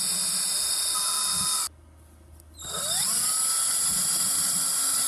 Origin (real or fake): real